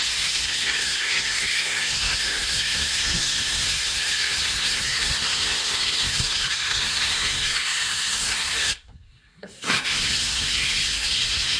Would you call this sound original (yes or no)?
no